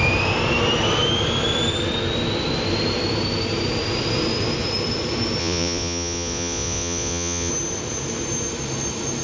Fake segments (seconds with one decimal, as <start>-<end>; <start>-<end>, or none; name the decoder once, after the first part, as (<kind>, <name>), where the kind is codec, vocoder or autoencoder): 5.4-7.5 (vocoder, Vocos)